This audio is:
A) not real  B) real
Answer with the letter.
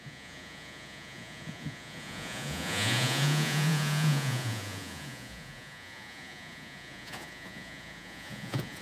A